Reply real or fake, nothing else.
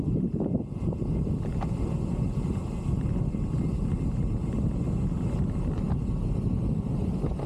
real